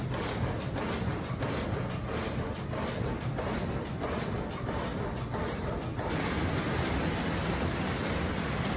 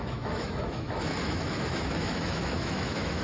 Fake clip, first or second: second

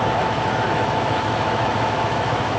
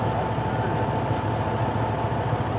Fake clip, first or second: first